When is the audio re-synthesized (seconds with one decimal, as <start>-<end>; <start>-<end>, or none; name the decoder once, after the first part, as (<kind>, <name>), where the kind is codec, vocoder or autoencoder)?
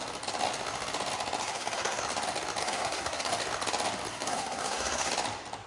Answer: 1.4-2.0 (codec, SNAC); 2.6-3.3; 4.1-5.1